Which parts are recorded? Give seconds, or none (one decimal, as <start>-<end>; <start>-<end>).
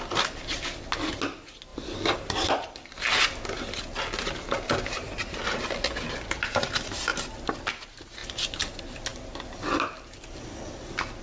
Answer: 0.0-1.7; 3.2-11.2